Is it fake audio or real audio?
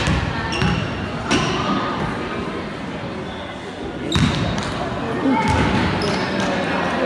real